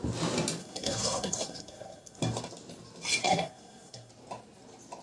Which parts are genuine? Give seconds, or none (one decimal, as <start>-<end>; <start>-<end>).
0.0-0.6; 2.2-3.2; 4.1-5.0